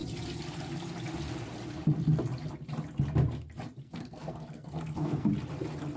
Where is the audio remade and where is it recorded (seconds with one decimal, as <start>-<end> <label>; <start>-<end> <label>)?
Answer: 0.0-3.8 recorded; 3.8-5.3 remade; 5.3-6.0 recorded

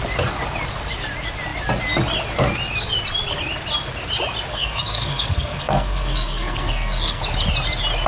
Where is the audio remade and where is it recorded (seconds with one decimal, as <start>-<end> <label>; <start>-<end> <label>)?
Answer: 0.0-4.5 recorded; 4.5-7.2 remade; 7.2-8.1 recorded

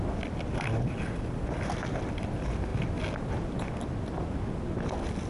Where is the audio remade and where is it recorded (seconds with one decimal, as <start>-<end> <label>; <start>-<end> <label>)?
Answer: 0.0-5.3 recorded